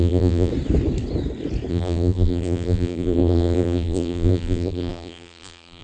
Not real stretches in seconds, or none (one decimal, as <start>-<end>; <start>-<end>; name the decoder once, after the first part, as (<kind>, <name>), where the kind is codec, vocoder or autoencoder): 0.0-0.5 (vocoder, BigVGAN v2); 1.7-5.8